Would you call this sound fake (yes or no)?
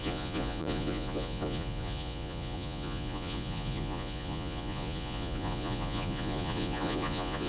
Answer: yes